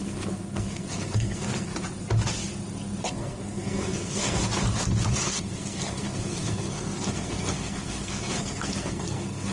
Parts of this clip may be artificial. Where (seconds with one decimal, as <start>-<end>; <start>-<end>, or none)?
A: 0.0-1.7; 3.0-4.4; 5.1-9.5